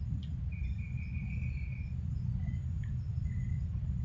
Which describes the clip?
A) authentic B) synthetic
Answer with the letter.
A